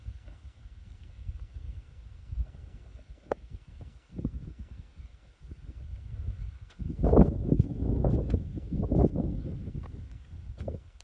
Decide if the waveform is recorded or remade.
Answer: remade